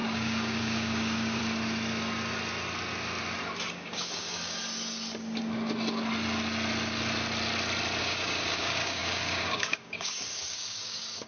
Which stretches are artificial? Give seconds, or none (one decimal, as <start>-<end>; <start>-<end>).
0.0-1.4; 3.7-4.6; 8.0-11.3